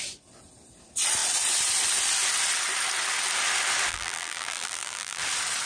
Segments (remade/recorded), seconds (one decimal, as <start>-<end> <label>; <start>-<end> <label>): 0.0-3.9 recorded; 3.9-5.2 remade; 5.2-5.7 recorded